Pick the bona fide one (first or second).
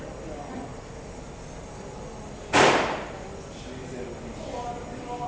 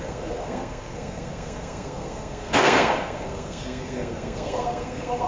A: first